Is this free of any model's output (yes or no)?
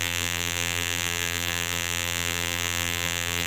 no